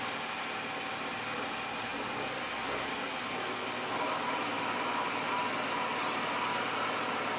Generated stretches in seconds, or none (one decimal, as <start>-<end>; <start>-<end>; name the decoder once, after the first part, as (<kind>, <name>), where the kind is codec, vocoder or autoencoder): none